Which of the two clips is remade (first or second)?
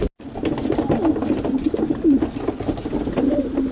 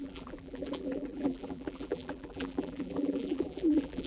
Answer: second